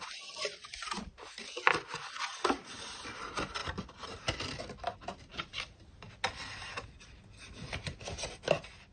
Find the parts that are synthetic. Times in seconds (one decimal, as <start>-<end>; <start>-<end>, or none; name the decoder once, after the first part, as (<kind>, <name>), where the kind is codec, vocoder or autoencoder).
none